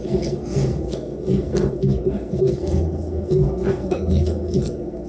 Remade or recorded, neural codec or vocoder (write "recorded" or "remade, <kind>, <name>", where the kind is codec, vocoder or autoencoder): remade, codec, SNAC